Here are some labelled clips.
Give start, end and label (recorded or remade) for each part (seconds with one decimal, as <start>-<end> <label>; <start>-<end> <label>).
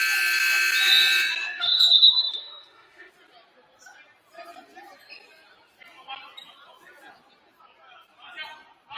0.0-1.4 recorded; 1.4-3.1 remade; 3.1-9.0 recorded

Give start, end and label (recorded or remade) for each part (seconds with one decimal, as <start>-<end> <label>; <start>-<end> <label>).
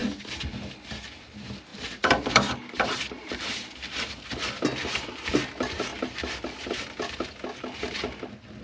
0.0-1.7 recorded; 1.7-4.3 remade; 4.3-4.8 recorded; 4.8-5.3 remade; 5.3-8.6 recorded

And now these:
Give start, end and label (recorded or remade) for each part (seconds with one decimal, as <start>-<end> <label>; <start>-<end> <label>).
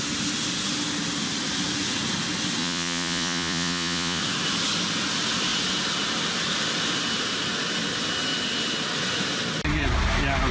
0.0-2.6 recorded; 2.6-4.2 remade; 4.2-10.5 recorded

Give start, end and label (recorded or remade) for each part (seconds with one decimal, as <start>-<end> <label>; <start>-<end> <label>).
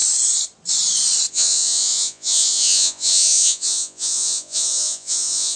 0.0-1.3 recorded; 1.3-5.6 remade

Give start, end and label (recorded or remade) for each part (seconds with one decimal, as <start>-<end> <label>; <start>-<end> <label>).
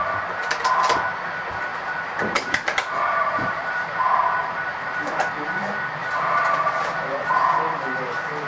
0.0-1.7 recorded; 1.7-5.6 remade; 5.6-6.0 recorded; 6.0-7.3 remade; 7.3-8.5 recorded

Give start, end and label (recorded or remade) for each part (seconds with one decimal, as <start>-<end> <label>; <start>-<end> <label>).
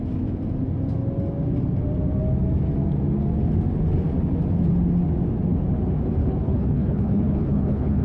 0.0-6.2 recorded; 6.2-8.0 remade